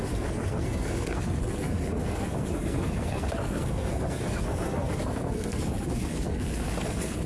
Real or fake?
fake